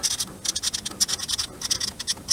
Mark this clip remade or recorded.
recorded